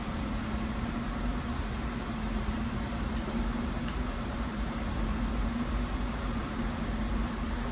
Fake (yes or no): yes